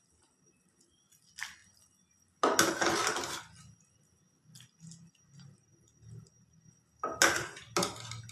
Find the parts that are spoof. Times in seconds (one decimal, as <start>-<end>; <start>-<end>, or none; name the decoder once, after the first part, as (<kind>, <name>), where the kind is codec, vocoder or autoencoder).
none